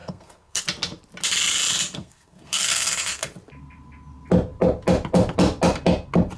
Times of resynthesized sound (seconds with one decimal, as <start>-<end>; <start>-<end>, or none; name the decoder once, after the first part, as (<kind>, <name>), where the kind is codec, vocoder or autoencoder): 0.0-0.6 (codec, SNAC); 2.0-3.3